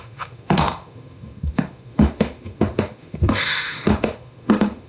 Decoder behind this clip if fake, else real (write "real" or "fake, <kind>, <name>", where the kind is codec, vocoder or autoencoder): fake, autoencoder, DAC-VAE